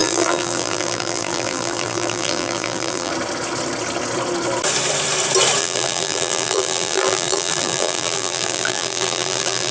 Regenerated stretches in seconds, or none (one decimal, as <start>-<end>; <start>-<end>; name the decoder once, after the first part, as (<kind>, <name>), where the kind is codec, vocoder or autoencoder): 0.0-3.1 (vocoder, BigVGAN v2); 5.6-9.7